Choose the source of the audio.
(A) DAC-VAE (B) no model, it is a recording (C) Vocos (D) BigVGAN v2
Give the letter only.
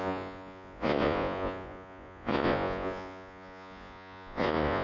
C